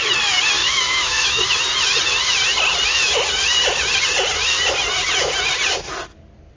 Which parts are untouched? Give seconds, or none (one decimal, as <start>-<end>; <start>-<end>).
0.0-0.6; 1.4-6.6